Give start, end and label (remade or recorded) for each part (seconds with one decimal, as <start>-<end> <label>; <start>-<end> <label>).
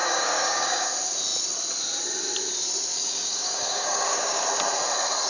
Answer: 0.0-0.9 remade; 0.9-2.9 recorded; 2.9-4.4 remade; 4.4-5.3 recorded